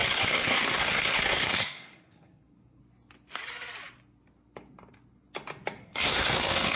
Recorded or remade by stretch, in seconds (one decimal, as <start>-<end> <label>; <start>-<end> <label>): 0.0-2.8 remade; 2.8-5.8 recorded; 5.8-6.8 remade